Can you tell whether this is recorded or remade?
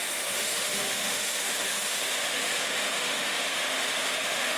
remade